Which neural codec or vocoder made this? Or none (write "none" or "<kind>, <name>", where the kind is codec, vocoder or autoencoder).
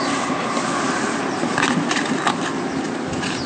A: none